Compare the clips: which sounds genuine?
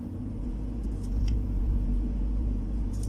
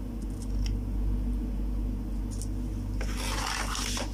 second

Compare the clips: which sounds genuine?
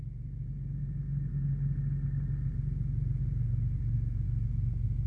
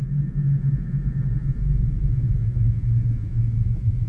first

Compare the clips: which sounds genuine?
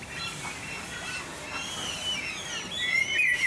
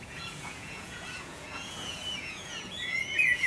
first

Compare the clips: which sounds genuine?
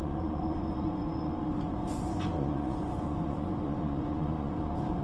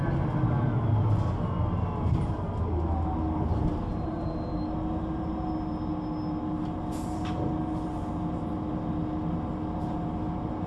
second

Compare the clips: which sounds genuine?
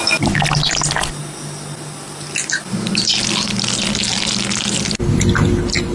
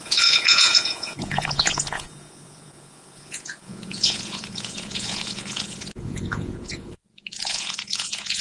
first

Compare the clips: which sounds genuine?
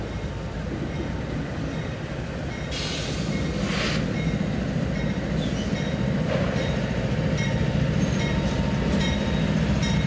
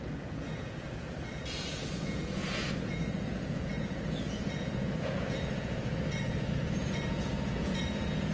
first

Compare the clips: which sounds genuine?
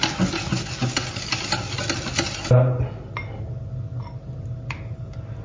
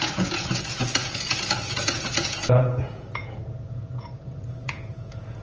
first